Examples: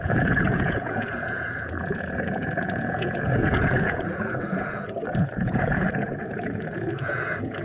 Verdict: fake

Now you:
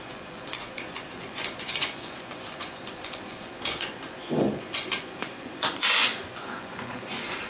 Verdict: fake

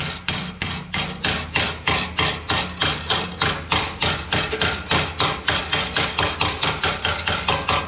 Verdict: real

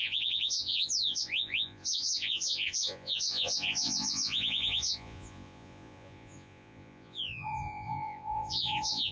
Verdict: fake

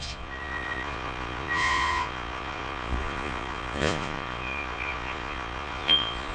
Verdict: fake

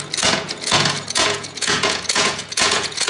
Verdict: fake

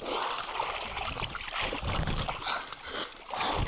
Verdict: real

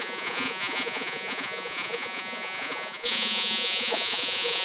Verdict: fake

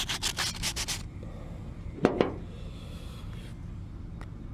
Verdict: real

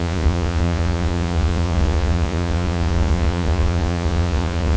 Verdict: fake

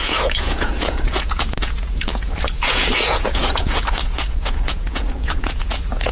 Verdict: fake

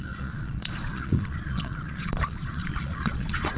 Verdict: fake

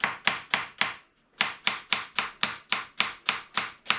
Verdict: real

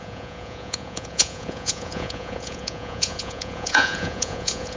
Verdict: fake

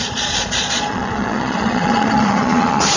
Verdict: fake